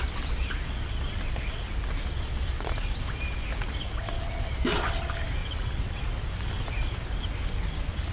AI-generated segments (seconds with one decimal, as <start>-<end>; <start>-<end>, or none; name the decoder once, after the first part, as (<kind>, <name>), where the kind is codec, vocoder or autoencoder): 5.4-6.0 (vocoder, WaveNeXt)